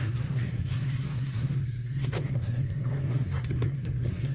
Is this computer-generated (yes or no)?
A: yes